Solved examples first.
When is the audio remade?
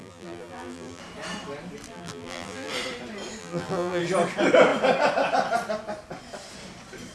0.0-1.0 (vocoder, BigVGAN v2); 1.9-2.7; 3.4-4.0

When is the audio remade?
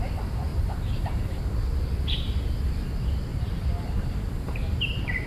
0.5-1.4 (vocoder, BigVGAN v2); 3.3-5.3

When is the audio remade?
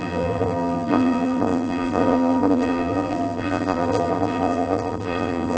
0.0-5.6 (vocoder, BigVGAN v2)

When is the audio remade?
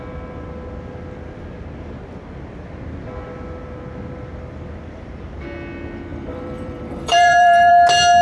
6.1-7.7 (vocoder, BigVGAN v2)